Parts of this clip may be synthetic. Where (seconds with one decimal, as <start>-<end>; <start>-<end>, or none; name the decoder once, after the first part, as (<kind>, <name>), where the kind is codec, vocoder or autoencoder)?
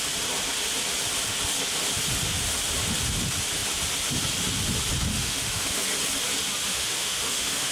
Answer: 5.1-5.8 (autoencoder, DAC-VAE); 6.7-7.7